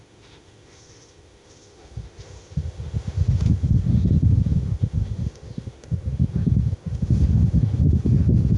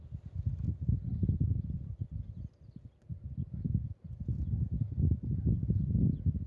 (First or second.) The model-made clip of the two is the first